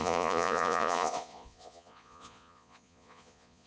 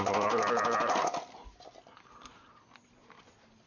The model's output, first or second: first